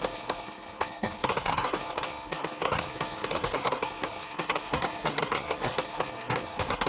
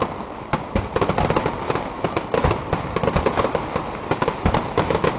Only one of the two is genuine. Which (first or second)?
second